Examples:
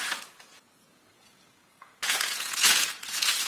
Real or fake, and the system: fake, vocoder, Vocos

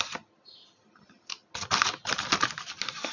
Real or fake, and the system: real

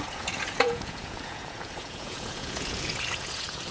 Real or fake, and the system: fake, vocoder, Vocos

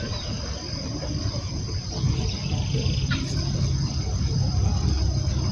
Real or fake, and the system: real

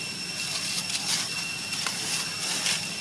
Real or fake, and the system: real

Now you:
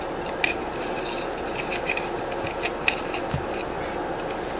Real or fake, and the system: real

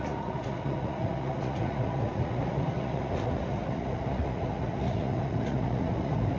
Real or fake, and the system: fake, vocoder, Vocos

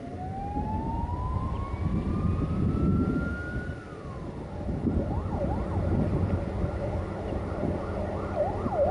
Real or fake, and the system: real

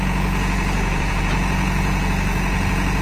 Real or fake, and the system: fake, vocoder, Vocos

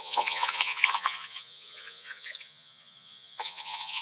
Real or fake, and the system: fake, vocoder, Vocos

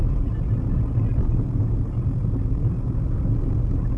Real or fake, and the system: real